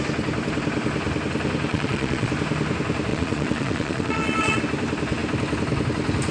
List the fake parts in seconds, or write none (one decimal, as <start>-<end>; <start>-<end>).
1.7-2.3; 3.1-4.6